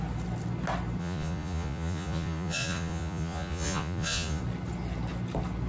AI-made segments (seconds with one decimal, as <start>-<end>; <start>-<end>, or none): 1.0-4.4

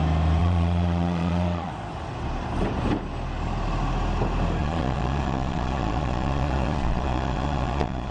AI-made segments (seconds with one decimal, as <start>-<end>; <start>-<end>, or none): 0.4-1.7; 4.6-8.1

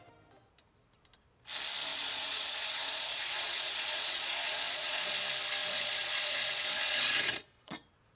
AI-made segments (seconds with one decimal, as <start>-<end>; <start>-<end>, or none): 1.9-5.1; 5.6-8.2

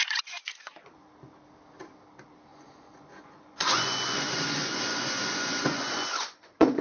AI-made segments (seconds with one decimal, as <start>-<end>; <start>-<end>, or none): 0.0-1.1; 2.5-6.8

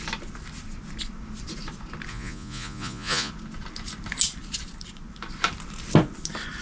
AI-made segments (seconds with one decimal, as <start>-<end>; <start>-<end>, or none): 2.1-3.3